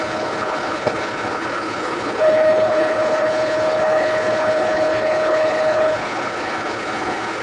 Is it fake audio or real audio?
fake